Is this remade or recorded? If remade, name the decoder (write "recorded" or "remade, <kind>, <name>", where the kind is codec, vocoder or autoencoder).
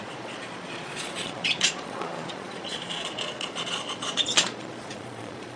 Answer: remade, vocoder, Vocos